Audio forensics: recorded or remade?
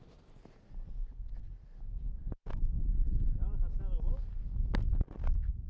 recorded